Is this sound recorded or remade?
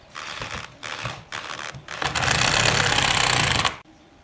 recorded